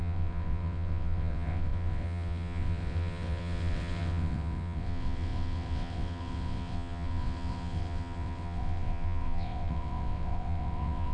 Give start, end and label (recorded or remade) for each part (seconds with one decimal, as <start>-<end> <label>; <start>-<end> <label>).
0.0-11.1 remade